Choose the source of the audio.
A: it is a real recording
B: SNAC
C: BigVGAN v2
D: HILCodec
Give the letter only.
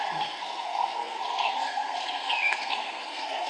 B